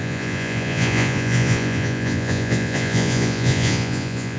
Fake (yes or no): yes